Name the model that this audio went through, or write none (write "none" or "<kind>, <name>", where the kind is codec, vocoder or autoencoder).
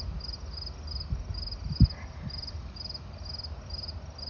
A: none